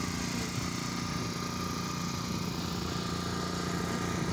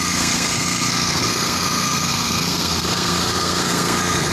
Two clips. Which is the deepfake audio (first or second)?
second